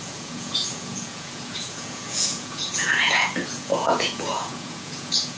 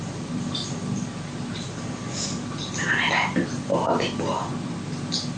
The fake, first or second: first